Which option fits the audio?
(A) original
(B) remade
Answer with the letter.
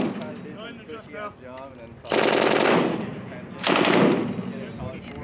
A